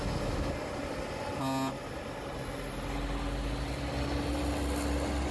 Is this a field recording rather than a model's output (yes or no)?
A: yes